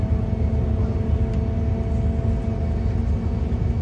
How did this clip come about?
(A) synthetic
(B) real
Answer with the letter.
B